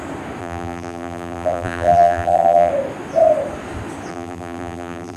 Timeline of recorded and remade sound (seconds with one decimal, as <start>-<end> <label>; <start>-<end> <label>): 0.0-0.4 recorded; 0.4-2.7 remade; 2.7-4.1 recorded; 4.1-5.2 remade